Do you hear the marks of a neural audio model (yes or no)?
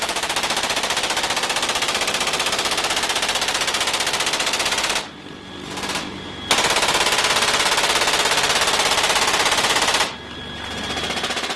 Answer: no